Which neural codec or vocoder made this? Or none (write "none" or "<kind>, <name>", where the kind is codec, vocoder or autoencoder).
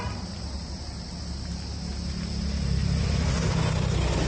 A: none